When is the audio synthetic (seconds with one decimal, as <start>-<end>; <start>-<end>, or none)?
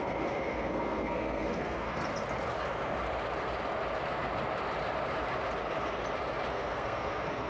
0.0-2.0; 6.5-7.5